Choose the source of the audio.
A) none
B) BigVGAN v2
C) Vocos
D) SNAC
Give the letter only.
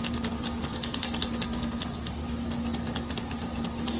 A